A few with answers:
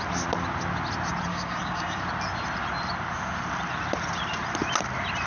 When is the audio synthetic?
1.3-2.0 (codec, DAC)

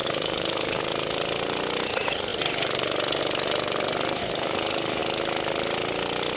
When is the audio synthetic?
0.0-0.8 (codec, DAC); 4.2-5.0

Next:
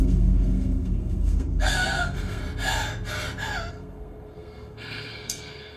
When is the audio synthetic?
0.0-2.4 (codec, SNAC); 3.7-5.8

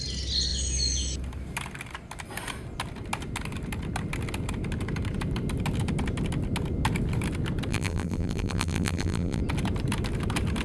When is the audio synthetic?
7.7-9.4 (vocoder, BigVGAN v2)

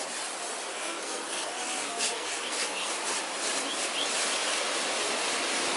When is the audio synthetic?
0.7-2.9 (codec, SNAC)